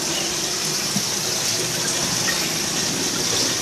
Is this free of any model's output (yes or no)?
yes